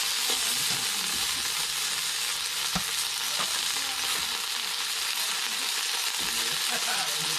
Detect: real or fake real